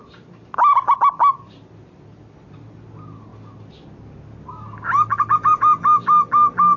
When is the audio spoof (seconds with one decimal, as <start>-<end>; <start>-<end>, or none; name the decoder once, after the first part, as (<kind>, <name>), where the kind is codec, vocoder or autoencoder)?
none